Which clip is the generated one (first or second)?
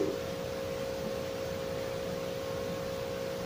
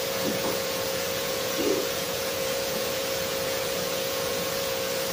second